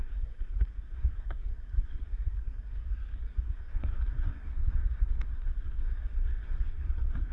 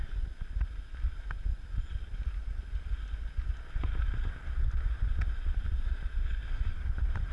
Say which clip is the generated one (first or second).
first